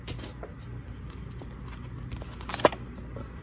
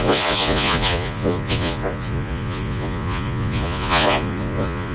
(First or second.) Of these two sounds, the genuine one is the first